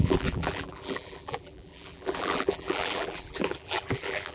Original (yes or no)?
no